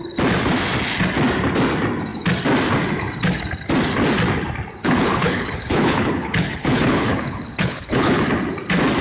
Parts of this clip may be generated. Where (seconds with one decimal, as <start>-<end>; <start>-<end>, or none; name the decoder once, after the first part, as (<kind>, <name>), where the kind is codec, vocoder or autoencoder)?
4.8-8.2 (codec, HILCodec)